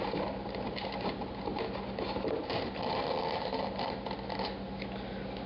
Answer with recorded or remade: recorded